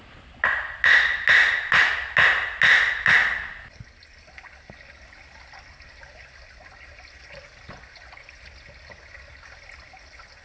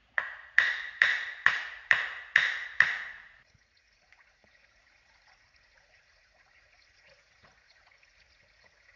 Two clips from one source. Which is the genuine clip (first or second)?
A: first